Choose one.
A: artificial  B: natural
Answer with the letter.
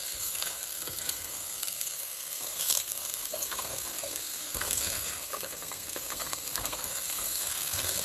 A